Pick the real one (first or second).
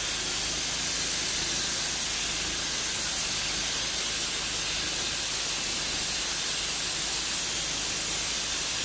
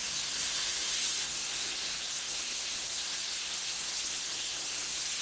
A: first